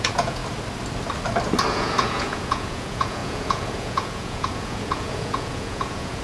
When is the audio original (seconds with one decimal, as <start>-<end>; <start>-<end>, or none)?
0.4-1.7

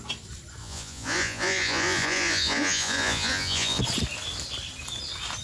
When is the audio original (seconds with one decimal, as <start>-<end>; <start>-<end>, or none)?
0.0-0.6; 3.8-5.4

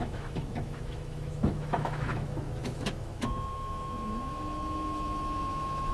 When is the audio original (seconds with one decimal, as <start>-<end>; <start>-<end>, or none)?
none

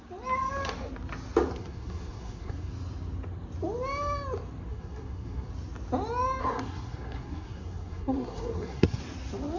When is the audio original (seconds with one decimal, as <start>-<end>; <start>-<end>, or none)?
0.0-1.6; 2.7-4.7; 5.5-6.4; 9.0-9.6